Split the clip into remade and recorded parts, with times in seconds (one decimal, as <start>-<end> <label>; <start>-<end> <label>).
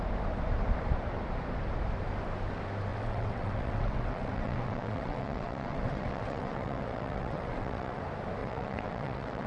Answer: 0.0-2.9 recorded; 2.9-8.0 remade; 8.0-8.4 recorded; 8.4-9.5 remade